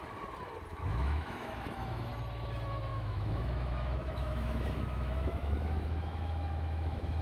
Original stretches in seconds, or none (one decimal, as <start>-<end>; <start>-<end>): 0.0-0.7; 2.1-2.9